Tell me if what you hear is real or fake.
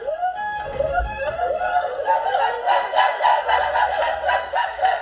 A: fake